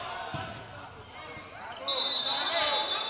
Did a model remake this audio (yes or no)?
no